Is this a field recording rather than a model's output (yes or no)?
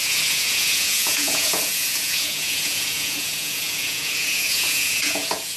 no